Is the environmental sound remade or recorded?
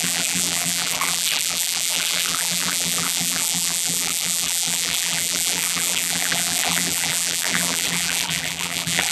remade